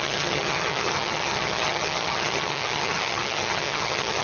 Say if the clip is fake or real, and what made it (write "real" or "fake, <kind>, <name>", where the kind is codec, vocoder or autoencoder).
fake, vocoder, HiFi-GAN